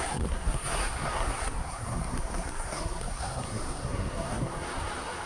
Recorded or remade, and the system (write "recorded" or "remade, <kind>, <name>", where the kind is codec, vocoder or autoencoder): remade, codec, SNAC